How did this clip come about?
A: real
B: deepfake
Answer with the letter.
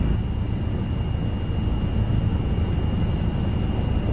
A